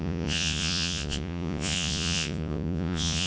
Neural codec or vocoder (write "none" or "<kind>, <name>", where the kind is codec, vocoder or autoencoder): vocoder, Vocos